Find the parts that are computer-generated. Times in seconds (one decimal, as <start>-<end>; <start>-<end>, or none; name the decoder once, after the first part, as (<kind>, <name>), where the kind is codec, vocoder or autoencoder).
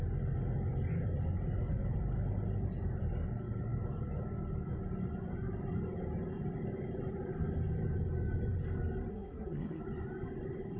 9.1-9.8 (codec, SNAC)